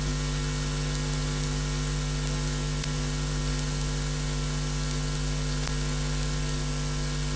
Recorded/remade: recorded